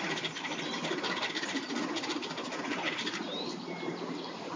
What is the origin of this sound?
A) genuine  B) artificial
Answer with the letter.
A